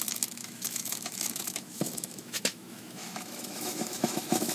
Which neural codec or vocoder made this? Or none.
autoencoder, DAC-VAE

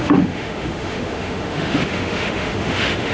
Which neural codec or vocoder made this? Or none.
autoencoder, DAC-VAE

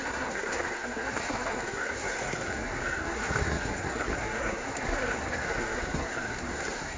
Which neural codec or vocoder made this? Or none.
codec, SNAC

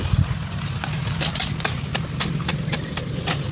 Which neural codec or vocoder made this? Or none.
none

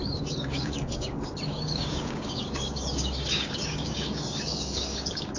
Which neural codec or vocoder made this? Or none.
codec, DAC